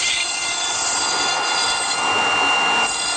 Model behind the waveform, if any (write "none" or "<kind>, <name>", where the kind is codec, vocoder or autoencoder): none